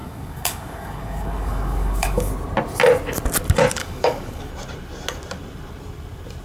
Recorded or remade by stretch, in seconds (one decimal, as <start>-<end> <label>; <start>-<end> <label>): 0.0-2.3 remade; 2.3-3.8 recorded; 3.8-4.5 remade; 4.5-6.4 recorded